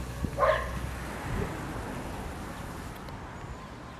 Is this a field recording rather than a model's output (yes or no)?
yes